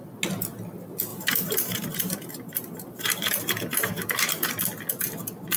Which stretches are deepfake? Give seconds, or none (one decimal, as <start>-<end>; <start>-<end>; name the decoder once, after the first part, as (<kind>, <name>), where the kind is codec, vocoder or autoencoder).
1.1-4.5 (vocoder, BigVGAN v2)